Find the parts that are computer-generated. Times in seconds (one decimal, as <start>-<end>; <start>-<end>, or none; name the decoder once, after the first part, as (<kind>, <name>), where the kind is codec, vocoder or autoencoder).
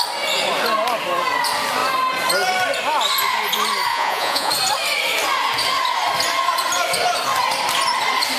3.9-4.5 (vocoder, Vocos)